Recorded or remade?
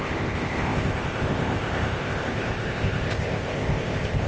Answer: remade